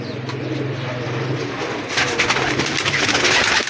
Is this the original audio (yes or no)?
yes